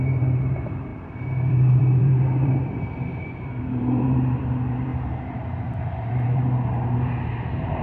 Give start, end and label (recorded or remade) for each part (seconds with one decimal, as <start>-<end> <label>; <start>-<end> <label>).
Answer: 0.0-7.8 remade

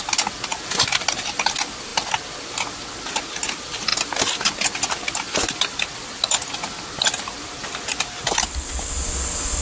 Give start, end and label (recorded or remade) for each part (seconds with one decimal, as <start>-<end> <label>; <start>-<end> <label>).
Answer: 0.0-9.6 recorded

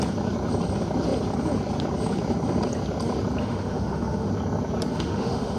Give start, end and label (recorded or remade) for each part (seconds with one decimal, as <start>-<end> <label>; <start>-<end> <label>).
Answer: 0.0-3.4 recorded; 3.4-4.3 remade; 4.3-4.9 recorded; 4.9-5.6 remade

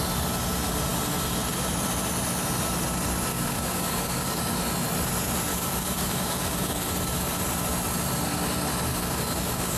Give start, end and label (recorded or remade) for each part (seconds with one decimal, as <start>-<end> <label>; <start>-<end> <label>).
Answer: 0.0-3.3 recorded; 3.3-4.4 remade; 4.4-5.5 recorded; 5.5-7.4 remade; 7.4-8.9 recorded; 8.9-9.8 remade